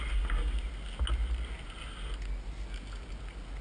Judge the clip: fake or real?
real